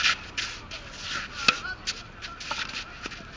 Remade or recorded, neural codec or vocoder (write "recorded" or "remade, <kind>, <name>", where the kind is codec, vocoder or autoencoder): recorded